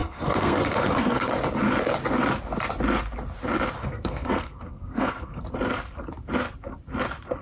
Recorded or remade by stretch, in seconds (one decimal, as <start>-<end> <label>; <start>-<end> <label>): 0.0-1.3 remade; 1.3-3.8 recorded; 3.8-5.4 remade; 5.4-7.4 recorded